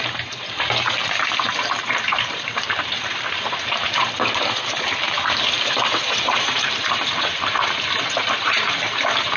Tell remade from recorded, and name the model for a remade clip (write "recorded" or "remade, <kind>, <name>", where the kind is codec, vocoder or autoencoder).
remade, vocoder, BigVGAN v2